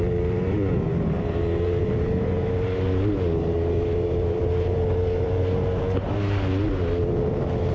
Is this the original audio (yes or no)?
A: no